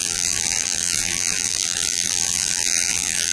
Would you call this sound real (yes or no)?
no